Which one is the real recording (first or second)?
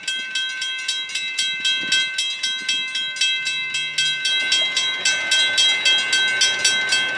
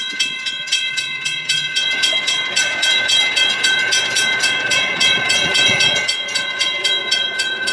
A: first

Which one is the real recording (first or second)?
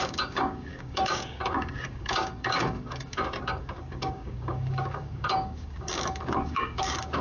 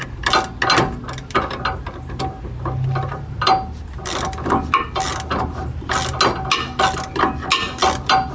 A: second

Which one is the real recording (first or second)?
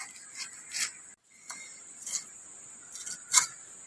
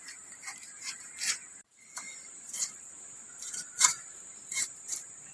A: first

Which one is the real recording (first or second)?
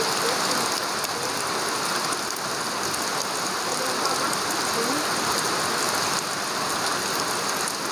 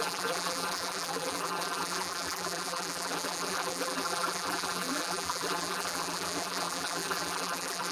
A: first